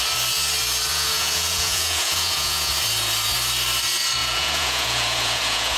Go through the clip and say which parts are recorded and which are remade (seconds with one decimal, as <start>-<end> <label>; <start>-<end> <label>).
0.0-0.9 recorded; 0.9-2.7 remade; 2.7-4.2 recorded; 4.2-5.8 remade